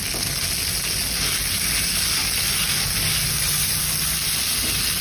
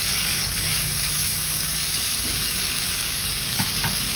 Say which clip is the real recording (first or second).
first